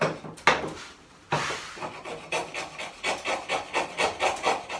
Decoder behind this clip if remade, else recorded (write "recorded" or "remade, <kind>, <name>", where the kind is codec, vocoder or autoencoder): recorded